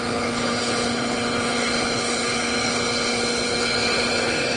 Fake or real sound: fake